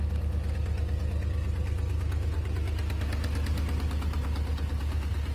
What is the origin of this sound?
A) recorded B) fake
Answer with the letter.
A